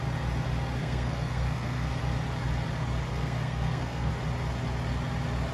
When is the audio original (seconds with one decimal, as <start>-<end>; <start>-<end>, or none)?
0.0-0.8; 2.0-3.1; 4.1-5.5